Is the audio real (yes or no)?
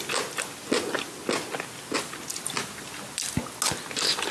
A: yes